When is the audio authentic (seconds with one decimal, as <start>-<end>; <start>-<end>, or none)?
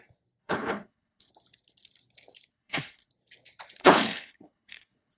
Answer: 0.0-0.4; 1.3-2.5; 3.1-3.8